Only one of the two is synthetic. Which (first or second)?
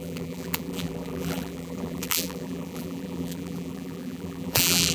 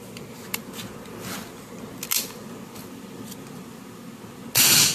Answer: first